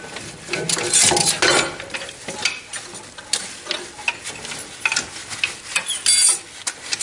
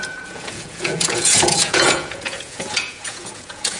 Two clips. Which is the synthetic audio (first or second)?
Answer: second